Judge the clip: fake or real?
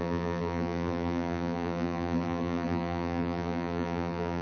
fake